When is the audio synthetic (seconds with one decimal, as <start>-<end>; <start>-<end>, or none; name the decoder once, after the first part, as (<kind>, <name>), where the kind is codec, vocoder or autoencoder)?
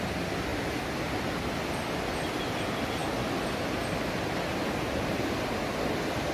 none